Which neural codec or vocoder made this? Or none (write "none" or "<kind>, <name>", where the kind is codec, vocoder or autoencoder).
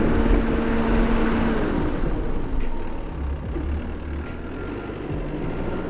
none